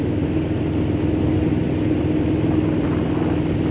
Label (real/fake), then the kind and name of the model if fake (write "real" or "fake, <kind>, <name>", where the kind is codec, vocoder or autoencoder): real